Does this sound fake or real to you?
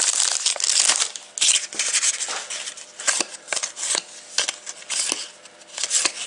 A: real